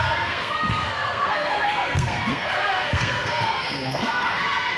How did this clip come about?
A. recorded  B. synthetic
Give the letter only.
B